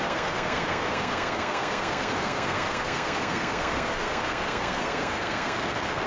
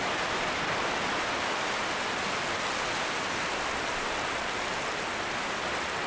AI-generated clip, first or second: first